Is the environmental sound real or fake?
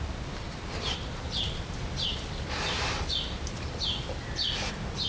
real